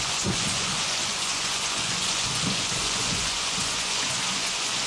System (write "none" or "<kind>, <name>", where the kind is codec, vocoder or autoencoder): vocoder, Vocos